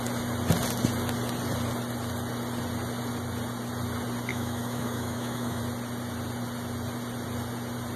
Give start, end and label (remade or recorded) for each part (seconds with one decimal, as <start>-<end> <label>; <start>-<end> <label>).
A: 0.0-4.3 recorded; 4.3-5.6 remade; 5.6-8.0 recorded